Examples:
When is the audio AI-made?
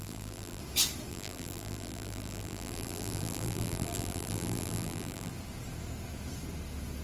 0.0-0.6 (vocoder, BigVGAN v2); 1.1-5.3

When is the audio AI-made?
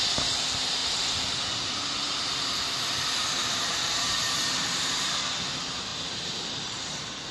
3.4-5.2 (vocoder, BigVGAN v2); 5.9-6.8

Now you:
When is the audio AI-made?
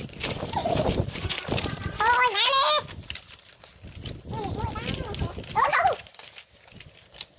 0.6-2.1 (vocoder, BigVGAN v2)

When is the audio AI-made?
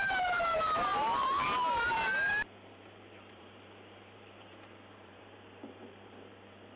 0.0-6.8 (vocoder, BigVGAN v2)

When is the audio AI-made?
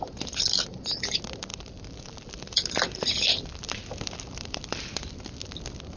1.5-5.0 (vocoder, BigVGAN v2)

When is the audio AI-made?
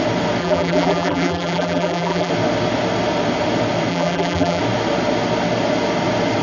0.4-2.3 (vocoder, BigVGAN v2); 3.9-4.6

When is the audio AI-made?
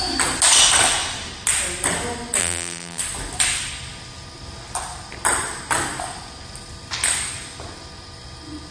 2.4-3.0 (vocoder, BigVGAN v2)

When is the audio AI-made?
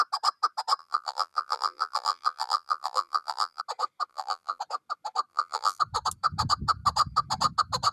0.8-3.6 (vocoder, BigVGAN v2); 4.1-4.6; 5.3-5.8